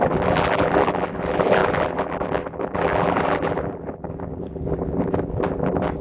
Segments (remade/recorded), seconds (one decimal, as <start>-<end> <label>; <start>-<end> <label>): 0.0-6.0 remade